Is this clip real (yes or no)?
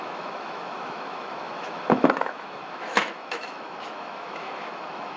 no